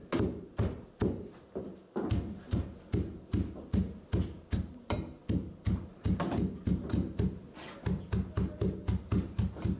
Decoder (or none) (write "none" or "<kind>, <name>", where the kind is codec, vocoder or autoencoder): none